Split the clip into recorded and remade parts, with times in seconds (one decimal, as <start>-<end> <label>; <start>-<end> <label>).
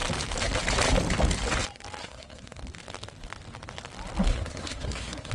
0.0-2.0 recorded; 2.0-2.6 remade; 2.6-4.3 recorded; 4.3-5.3 remade